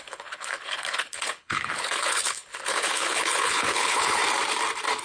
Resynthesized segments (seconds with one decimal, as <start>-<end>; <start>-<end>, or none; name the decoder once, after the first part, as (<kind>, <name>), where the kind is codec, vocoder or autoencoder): 0.0-4.2 (codec, HILCodec)